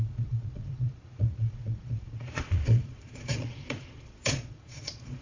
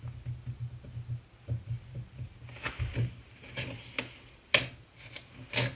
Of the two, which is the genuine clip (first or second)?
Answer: second